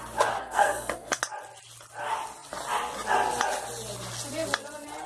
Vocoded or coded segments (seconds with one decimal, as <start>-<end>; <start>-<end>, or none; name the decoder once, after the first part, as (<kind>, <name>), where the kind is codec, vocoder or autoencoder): 0.4-1.2 (codec, SNAC)